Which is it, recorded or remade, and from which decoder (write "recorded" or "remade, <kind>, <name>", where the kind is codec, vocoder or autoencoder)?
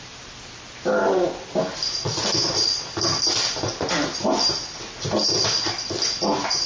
recorded